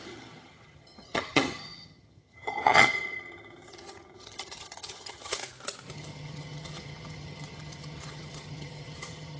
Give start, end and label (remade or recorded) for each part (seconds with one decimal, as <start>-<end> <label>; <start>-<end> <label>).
0.0-5.4 remade; 5.4-5.9 recorded; 5.9-9.4 remade